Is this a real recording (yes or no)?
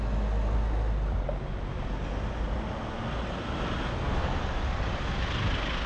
yes